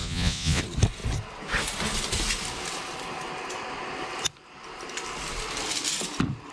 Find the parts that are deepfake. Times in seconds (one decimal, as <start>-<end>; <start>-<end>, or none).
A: 0.0-0.6